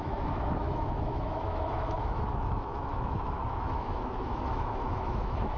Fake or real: fake